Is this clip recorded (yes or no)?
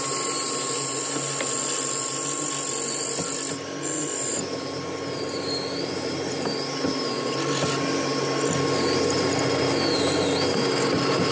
yes